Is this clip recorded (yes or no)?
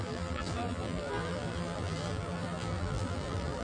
no